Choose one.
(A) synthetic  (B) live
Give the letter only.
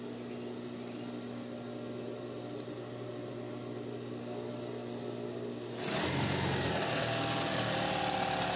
B